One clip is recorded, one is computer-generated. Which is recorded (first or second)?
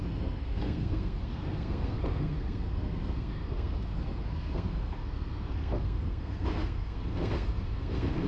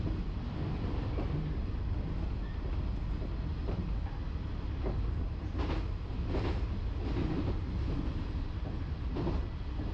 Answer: second